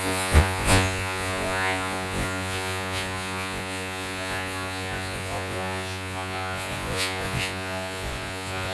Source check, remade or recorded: remade